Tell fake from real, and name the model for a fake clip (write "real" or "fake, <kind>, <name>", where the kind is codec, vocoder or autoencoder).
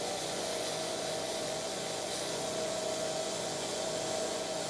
fake, vocoder, Vocos